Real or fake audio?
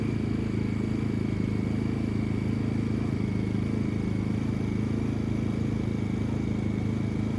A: real